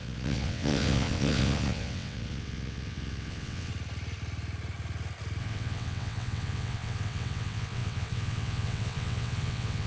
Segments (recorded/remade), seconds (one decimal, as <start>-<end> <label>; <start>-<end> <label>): 0.0-3.7 remade; 3.7-5.4 recorded; 5.4-9.9 remade